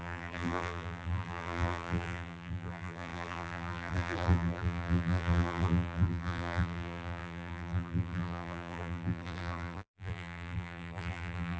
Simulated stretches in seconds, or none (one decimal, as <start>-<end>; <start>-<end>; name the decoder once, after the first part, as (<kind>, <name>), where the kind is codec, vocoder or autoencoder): 0.0-11.6 (vocoder, BigVGAN v2)